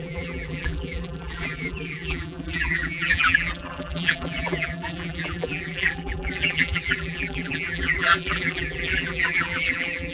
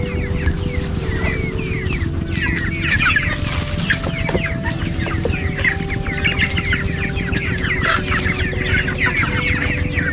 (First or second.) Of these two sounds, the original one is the second